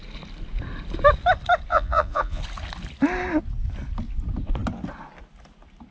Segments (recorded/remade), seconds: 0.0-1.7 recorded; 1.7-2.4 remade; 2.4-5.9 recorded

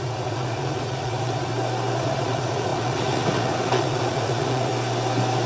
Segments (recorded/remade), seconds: 0.0-1.5 remade; 1.5-2.0 recorded; 2.0-4.7 remade; 4.7-5.5 recorded

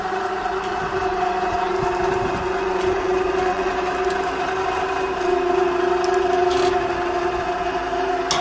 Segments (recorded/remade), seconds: 0.0-2.3 recorded; 2.3-3.7 remade; 3.7-8.4 recorded

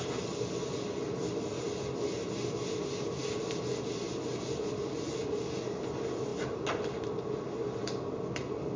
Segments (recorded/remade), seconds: 0.0-8.8 recorded

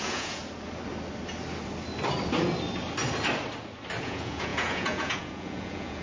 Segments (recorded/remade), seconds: 0.0-0.4 remade; 0.4-4.0 recorded; 4.0-6.0 remade

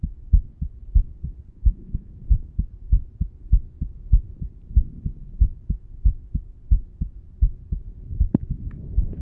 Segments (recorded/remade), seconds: 0.0-1.5 recorded; 1.5-2.1 remade; 2.1-9.2 recorded

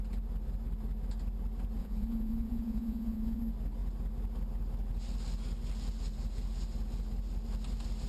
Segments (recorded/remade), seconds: 0.0-1.8 recorded; 1.8-3.4 remade; 3.4-8.1 recorded